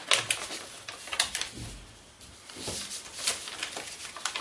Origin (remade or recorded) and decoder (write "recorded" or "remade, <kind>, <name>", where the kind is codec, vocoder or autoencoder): recorded